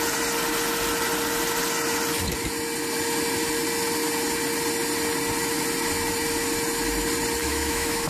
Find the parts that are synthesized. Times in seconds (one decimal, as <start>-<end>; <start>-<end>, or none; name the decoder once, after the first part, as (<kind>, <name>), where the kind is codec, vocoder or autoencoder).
7.4-8.1 (autoencoder, DAC-VAE)